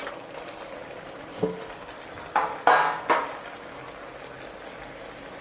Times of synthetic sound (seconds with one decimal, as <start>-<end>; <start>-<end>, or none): none